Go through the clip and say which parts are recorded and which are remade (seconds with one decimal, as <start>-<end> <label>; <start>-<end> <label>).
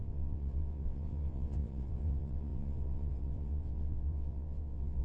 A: 0.0-5.0 remade